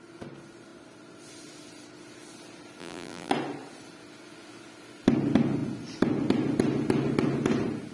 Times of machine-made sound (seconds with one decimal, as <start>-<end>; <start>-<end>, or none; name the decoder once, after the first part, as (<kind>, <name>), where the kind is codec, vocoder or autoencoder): 2.8-3.3 (vocoder, BigVGAN v2)